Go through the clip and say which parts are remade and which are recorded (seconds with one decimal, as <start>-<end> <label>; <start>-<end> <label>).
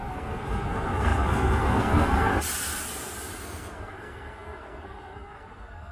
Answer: 0.0-2.3 remade; 2.3-3.4 recorded; 3.4-5.9 remade